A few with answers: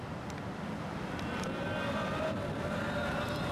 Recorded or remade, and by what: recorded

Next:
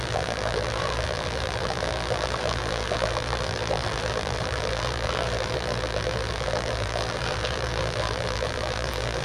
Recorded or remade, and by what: remade, vocoder, BigVGAN v2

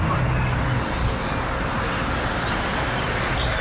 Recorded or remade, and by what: recorded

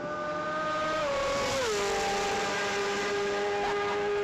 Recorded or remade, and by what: recorded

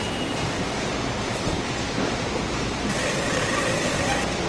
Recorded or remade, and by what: remade, vocoder, BigVGAN v2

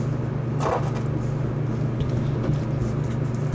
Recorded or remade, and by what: recorded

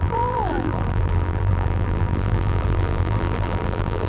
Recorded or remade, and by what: remade, vocoder, BigVGAN v2